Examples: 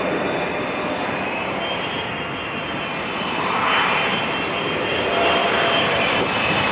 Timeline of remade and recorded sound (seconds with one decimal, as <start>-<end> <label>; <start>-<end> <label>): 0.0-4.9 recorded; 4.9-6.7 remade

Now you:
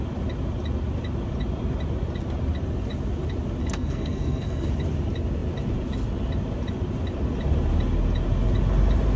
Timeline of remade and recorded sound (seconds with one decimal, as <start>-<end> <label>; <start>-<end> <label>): 0.0-3.6 recorded; 3.6-4.7 remade; 4.7-9.2 recorded

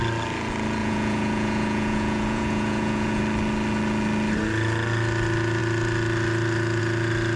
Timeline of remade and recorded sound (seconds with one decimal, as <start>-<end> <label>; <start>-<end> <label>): 0.0-0.8 recorded; 0.8-3.2 remade; 3.2-7.4 recorded